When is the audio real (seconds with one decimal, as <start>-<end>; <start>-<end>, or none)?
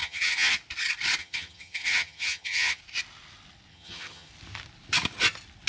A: 0.6-1.2; 2.8-3.7; 4.3-5.7